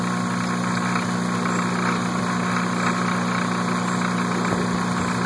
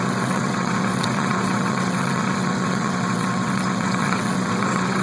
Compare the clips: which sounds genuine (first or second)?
first